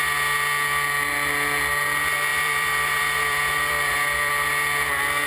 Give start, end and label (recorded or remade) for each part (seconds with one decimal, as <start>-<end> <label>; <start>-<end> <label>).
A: 0.0-2.3 recorded; 2.3-4.3 remade; 4.3-5.3 recorded